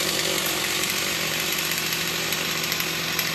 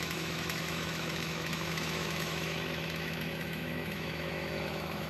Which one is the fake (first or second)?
second